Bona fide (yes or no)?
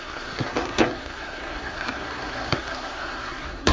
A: no